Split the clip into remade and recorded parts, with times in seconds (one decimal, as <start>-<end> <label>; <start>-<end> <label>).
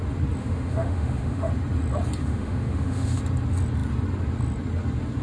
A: 0.0-0.4 recorded; 0.4-1.5 remade; 1.5-2.2 recorded; 2.2-3.2 remade; 3.2-5.2 recorded